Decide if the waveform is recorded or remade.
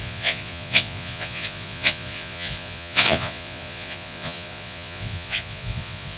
remade